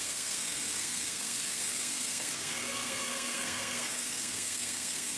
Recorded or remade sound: remade